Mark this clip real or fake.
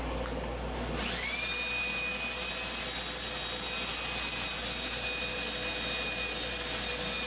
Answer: real